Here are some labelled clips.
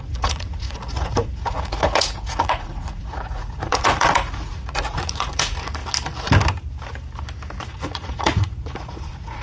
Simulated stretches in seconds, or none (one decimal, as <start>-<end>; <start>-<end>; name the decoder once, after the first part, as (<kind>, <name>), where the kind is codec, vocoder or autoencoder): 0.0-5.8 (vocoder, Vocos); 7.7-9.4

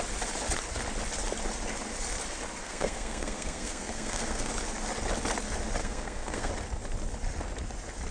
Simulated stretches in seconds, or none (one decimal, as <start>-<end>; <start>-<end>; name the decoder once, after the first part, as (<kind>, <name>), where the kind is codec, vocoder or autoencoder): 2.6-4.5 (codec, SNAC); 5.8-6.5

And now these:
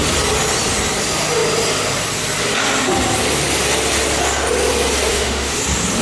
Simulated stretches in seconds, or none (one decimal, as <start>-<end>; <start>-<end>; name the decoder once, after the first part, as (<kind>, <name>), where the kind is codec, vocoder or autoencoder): 5.1-5.6 (autoencoder, DAC-VAE)

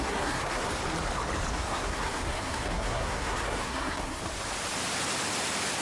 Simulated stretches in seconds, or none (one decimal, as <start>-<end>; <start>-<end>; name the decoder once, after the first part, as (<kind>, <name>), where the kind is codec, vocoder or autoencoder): 0.0-0.7 (codec, SNAC); 1.5-4.2

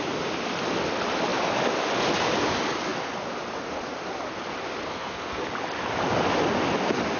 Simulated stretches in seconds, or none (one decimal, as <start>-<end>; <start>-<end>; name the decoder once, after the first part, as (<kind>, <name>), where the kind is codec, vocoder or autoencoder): 4.9-5.4 (codec, SNAC)

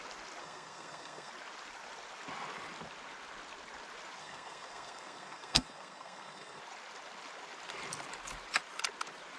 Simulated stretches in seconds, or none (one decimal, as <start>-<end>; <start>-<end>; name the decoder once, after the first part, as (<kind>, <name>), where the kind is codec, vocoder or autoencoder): 0.4-1.3 (codec, SNAC); 4.2-6.6

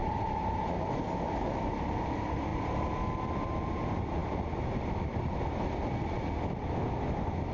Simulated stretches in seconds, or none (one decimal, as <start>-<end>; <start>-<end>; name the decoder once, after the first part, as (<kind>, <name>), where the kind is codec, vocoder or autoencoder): none

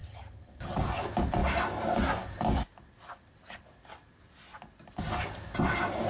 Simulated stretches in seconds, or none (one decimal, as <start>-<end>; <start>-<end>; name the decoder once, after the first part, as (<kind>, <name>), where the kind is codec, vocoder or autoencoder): 0.0-0.8 (vocoder, HiFi-GAN)